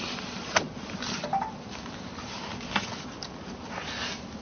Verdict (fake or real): real